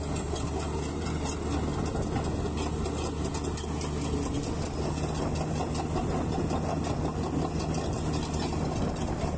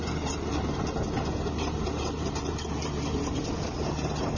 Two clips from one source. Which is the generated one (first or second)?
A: second